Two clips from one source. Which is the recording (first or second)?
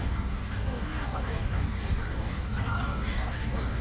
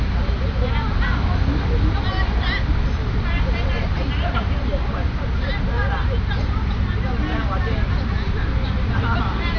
second